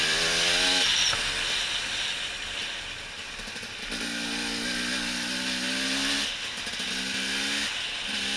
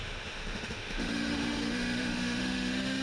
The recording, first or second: first